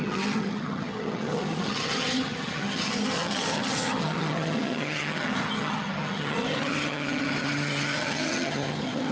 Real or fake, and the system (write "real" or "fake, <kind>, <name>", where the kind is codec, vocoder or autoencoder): fake, vocoder, HiFi-GAN